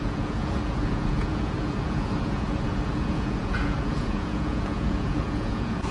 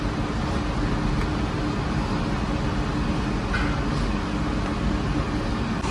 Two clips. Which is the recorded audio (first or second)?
second